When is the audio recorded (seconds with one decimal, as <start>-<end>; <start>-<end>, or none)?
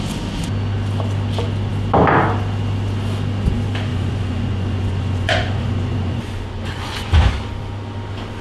0.0-3.9; 7.3-8.4